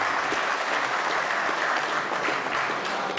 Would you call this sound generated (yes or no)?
no